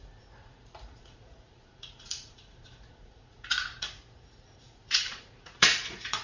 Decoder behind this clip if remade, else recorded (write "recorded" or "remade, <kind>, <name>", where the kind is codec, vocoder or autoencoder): remade, vocoder, Vocos